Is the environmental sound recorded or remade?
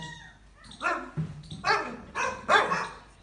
recorded